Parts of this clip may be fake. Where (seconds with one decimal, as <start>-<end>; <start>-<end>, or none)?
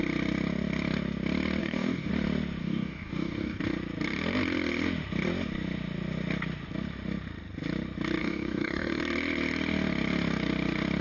1.6-2.1; 2.6-3.6; 8.2-9.0